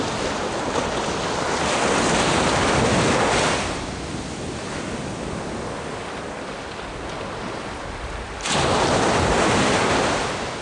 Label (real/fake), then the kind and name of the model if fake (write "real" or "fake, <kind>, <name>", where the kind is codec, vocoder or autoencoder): real